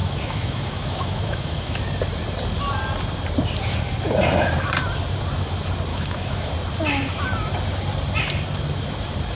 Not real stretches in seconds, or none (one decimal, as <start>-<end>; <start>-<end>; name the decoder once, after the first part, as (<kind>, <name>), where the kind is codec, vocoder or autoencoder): 0.0-1.8 (autoencoder, DAC-VAE); 5.9-6.5